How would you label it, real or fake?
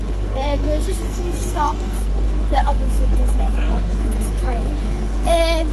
fake